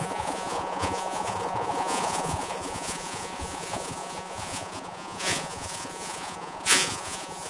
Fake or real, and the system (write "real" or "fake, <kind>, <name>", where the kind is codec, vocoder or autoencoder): fake, vocoder, Vocos